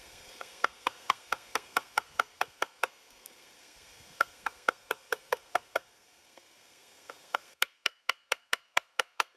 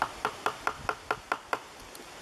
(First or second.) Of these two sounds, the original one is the second